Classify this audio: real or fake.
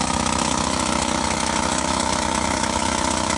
fake